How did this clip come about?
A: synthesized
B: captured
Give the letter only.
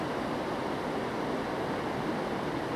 B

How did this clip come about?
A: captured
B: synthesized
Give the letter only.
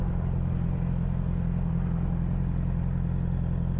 A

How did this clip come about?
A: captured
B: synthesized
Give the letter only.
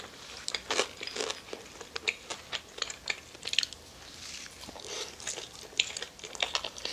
A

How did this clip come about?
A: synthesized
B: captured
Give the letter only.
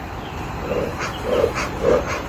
B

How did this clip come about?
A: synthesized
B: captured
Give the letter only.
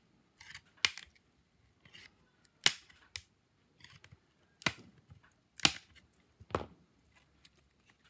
B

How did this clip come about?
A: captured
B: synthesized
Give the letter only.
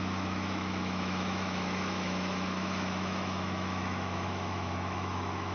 B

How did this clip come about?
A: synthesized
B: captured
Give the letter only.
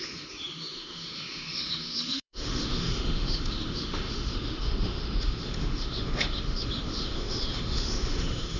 A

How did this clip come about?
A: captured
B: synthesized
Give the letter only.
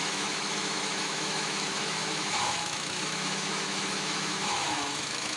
B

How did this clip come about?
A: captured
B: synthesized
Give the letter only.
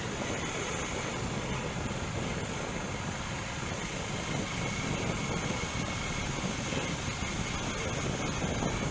A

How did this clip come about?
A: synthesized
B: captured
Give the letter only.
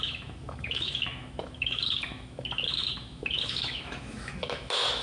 A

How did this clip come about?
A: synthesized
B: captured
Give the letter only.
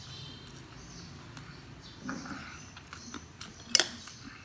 B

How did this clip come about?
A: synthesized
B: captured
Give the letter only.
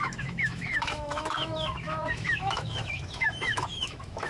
A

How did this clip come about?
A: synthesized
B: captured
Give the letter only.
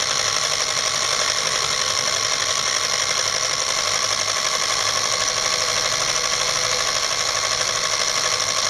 B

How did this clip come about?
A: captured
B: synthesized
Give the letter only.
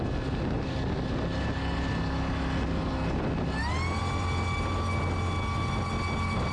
A